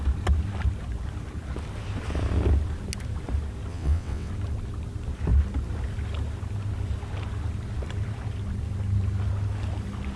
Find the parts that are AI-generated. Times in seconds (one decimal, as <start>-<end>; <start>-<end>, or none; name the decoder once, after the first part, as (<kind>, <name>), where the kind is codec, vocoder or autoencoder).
3.7-4.3 (vocoder, WaveNeXt)